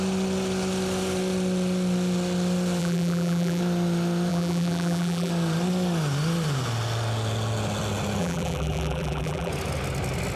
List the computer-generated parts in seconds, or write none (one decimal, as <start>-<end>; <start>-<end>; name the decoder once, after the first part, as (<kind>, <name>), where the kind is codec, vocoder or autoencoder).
2.8-3.6 (vocoder, BigVGAN v2); 4.3-5.3; 8.2-9.5